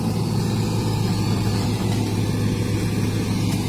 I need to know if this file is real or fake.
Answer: real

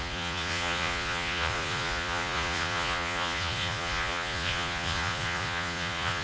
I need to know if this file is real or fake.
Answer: fake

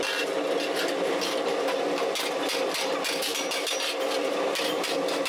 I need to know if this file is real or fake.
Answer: real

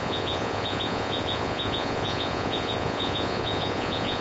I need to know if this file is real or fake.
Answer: fake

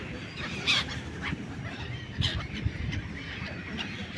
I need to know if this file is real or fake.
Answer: fake